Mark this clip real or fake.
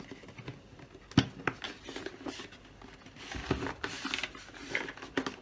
real